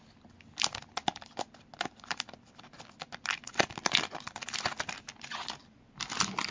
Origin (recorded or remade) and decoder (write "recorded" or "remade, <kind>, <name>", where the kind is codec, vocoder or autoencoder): recorded